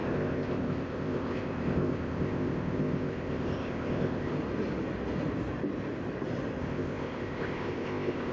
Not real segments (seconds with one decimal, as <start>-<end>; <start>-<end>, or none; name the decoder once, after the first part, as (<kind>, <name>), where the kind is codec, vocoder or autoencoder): 0.0-4.3 (codec, ZipCodec); 6.6-8.3